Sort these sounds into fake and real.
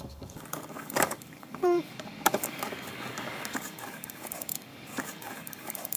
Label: fake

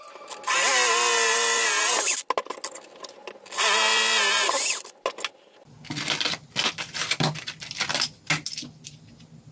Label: real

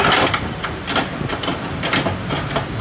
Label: real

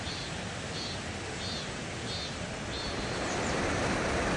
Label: real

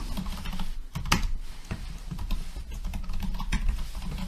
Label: real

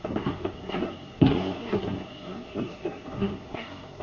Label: fake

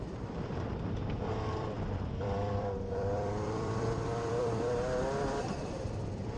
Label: fake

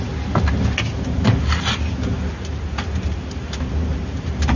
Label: real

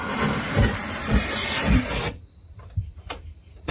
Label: real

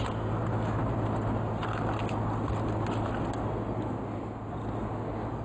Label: real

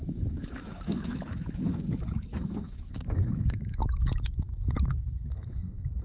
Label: fake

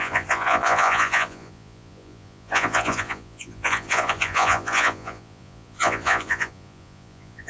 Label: fake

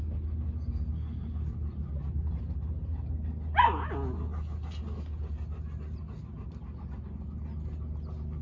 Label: real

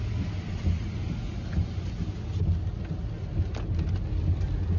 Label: real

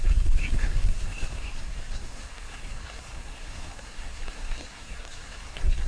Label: fake